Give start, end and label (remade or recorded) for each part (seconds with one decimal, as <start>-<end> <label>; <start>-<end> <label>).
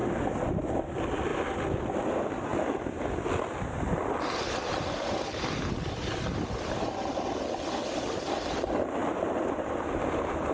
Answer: 0.0-9.0 recorded; 9.0-10.5 remade